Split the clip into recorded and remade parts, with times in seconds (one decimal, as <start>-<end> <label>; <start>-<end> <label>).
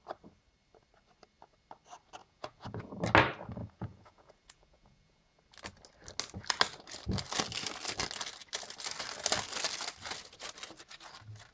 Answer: 0.0-2.2 recorded; 2.2-2.9 remade; 2.9-3.6 recorded; 3.6-5.4 remade; 5.4-11.5 recorded